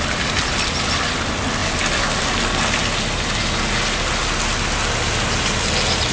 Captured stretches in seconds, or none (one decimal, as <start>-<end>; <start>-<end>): 0.0-6.1